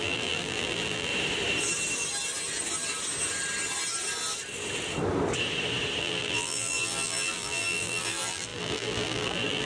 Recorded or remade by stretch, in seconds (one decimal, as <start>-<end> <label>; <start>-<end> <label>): 0.0-1.1 remade; 1.1-6.0 recorded; 6.0-9.7 remade